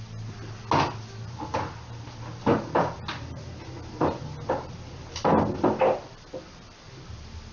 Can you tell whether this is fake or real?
real